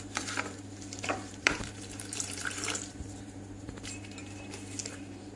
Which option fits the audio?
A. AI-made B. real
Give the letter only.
A